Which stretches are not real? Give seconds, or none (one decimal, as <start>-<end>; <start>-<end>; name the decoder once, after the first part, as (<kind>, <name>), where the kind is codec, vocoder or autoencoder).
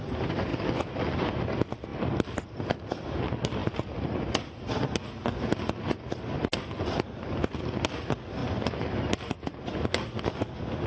none